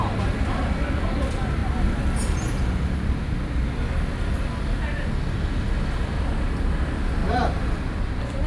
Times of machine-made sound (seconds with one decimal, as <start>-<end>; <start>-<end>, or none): 7.2-7.8